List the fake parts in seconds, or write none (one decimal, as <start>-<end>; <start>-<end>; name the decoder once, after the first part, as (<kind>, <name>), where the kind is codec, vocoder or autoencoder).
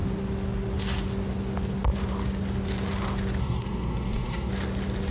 3.4-4.5 (codec, SNAC)